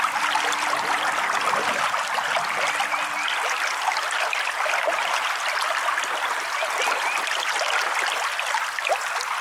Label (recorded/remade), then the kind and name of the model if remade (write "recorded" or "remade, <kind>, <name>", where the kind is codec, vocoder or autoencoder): recorded